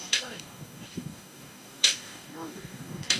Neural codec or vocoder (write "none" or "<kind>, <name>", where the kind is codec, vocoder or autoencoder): codec, DAC